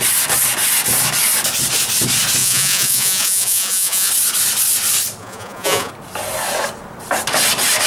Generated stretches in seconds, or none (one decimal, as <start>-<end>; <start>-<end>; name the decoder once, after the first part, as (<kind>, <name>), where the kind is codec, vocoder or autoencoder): 2.4-4.1 (vocoder, Vocos); 5.2-5.9

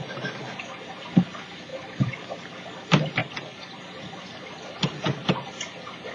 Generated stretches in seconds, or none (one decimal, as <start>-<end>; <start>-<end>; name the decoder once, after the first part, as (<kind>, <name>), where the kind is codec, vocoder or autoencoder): none

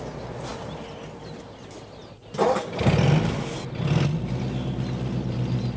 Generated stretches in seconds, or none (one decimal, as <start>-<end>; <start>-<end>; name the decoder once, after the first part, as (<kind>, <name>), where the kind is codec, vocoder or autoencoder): none

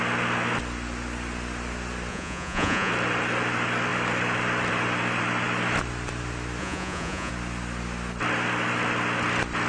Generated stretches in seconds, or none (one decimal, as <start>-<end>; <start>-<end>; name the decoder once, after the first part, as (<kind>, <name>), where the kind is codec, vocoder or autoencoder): 2.1-2.9 (vocoder, Vocos); 6.6-7.3

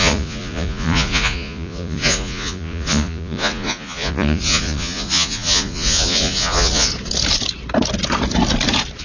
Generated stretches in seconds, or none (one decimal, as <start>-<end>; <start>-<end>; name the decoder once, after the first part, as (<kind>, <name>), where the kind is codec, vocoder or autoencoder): 0.0-6.9 (vocoder, Vocos)

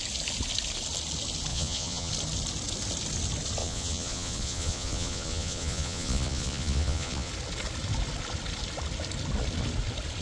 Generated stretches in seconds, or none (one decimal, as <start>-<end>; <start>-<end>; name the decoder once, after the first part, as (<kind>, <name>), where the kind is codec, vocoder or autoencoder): 1.5-2.1 (vocoder, Vocos); 3.6-7.3

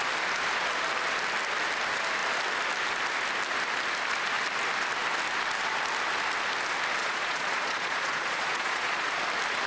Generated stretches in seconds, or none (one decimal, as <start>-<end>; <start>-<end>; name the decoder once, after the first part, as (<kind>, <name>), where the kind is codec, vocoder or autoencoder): 7.0-9.1 (vocoder, Vocos)

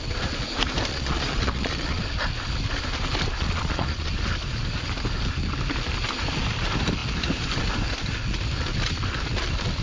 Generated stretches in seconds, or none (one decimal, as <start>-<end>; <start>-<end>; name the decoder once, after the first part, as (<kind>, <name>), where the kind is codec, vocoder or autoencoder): 0.9-2.0 (vocoder, Vocos); 3.4-4.1